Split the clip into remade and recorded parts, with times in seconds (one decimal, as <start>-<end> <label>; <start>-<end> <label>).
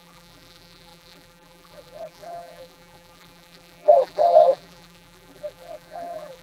0.0-6.4 remade